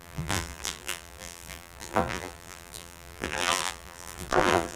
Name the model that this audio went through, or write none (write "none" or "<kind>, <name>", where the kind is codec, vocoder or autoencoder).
vocoder, BigVGAN v2